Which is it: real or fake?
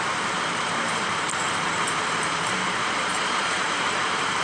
fake